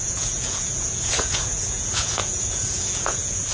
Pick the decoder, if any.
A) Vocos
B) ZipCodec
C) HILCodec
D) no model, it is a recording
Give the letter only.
A